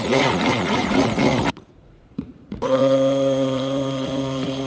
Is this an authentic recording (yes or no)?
no